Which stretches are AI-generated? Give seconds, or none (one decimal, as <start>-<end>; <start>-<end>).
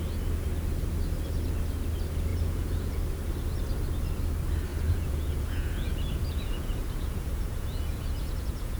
2.3-3.0; 4.7-8.8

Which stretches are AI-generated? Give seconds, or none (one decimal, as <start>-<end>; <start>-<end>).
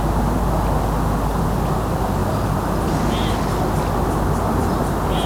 none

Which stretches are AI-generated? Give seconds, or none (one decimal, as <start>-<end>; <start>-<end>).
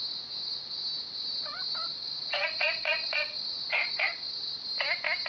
1.3-4.5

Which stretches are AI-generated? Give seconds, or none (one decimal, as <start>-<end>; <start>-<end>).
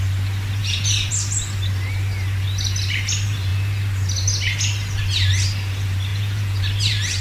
0.6-1.1; 6.1-6.6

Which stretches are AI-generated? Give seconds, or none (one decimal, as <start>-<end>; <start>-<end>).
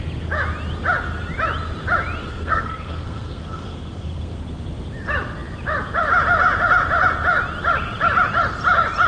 2.2-4.4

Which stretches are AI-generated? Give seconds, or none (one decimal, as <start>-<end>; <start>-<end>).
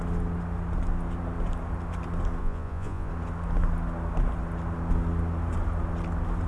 2.4-3.1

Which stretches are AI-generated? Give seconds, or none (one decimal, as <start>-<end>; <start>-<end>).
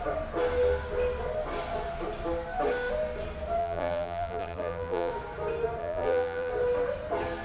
3.6-5.1; 5.8-6.5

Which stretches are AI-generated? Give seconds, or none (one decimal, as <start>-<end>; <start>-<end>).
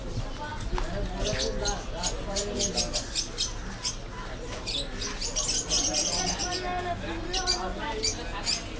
none